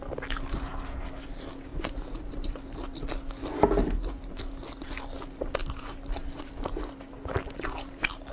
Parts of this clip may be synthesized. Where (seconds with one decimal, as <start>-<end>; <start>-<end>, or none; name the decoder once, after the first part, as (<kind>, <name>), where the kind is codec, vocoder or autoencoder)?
1.7-2.6 (vocoder, BigVGAN v2); 3.8-4.5; 5.6-6.5